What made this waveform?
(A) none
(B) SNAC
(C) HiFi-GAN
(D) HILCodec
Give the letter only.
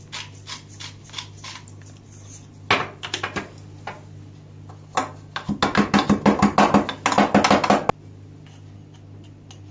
A